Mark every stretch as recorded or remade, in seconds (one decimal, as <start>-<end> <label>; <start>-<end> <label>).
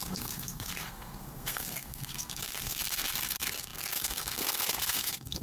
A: 0.0-5.4 remade